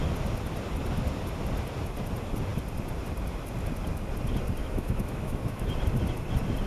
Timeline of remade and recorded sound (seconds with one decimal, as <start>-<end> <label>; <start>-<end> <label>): 0.0-4.6 recorded; 4.6-5.7 remade; 5.7-6.7 recorded